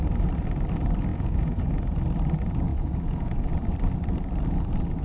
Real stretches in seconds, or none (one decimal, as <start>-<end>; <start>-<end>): 0.0-1.1; 2.0-2.7; 3.5-5.0